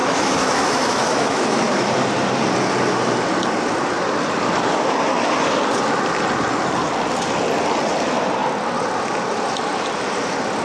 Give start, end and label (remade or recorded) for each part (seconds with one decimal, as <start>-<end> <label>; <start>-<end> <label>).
0.0-1.9 remade; 1.9-10.6 recorded